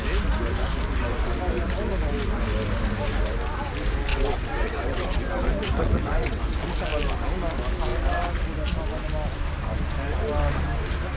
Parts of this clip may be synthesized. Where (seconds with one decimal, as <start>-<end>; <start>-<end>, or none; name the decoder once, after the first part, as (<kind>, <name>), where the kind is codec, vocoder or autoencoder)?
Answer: 4.1-5.2 (vocoder, WaveNeXt); 5.7-6.4